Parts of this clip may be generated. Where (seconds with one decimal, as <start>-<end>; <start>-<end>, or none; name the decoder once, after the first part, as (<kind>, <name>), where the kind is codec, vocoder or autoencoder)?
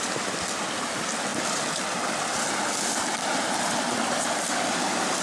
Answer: none